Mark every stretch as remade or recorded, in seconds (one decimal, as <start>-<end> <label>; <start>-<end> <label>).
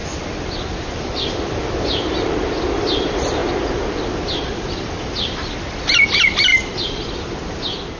0.0-8.0 recorded